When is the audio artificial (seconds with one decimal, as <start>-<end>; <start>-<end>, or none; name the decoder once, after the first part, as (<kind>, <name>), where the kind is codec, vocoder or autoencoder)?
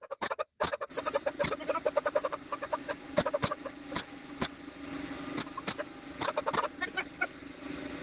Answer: 2.2-4.6 (vocoder, Vocos)